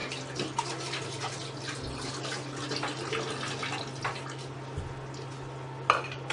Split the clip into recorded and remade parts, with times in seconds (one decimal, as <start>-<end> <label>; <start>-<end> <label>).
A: 0.0-6.3 recorded